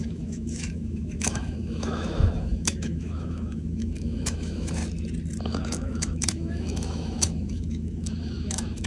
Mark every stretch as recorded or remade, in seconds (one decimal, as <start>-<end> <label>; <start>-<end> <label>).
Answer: 0.0-4.8 remade; 4.8-5.4 recorded; 5.4-8.9 remade